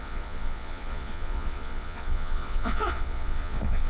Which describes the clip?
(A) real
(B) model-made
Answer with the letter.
B